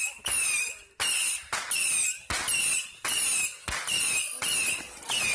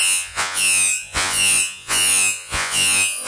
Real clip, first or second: first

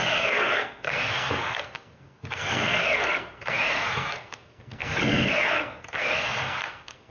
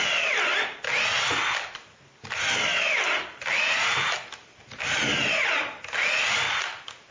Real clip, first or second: second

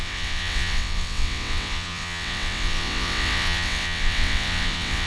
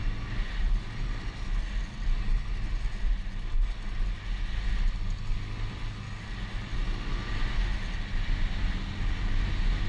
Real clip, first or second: second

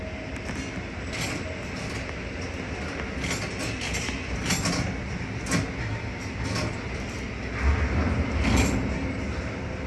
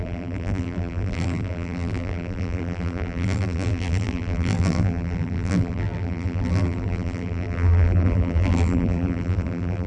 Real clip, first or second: first